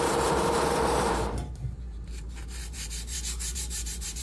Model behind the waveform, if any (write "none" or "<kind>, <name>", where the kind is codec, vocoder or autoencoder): vocoder, BigVGAN v2